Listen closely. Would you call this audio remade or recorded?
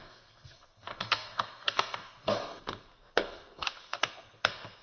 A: remade